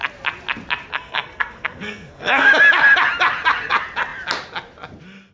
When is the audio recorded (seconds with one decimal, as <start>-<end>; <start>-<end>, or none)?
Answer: 0.0-0.9; 2.5-5.3